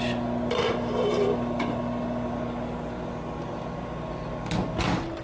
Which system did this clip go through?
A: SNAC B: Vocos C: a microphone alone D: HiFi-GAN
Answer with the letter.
C